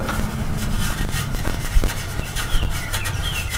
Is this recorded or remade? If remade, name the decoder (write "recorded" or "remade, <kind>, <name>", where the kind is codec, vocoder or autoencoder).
remade, vocoder, BigVGAN v2